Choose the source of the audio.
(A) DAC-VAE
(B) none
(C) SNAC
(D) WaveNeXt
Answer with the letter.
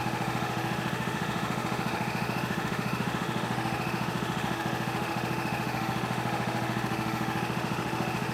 A